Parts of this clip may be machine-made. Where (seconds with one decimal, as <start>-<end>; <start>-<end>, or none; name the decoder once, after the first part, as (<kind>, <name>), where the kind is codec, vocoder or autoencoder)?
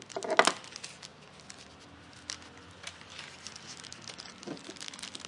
none